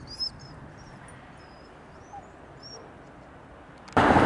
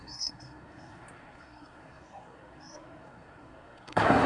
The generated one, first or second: second